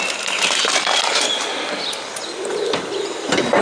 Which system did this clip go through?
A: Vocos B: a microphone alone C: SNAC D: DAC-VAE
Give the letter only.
B